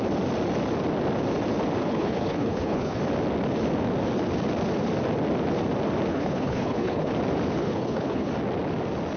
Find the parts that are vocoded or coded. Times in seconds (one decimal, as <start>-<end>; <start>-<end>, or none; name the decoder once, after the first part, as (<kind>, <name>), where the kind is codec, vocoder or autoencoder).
1.8-3.0 (codec, HILCodec); 6.1-7.1; 7.6-8.3